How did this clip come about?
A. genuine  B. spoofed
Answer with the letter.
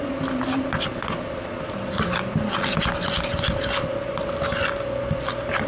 A